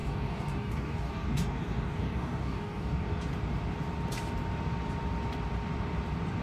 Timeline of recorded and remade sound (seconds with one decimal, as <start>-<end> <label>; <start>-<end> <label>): 0.0-3.2 remade; 3.2-6.4 recorded